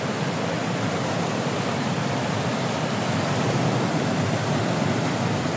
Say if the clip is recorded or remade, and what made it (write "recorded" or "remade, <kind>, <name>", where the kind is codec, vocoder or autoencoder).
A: recorded